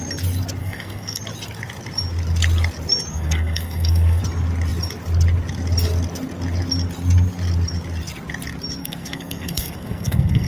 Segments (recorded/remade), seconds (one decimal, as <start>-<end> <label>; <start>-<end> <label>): 0.0-0.6 recorded; 0.6-1.2 remade; 1.2-3.1 recorded; 3.1-4.2 remade; 4.2-8.8 recorded; 8.8-10.5 remade